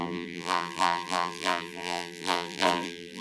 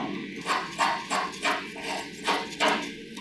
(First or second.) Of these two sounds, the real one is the second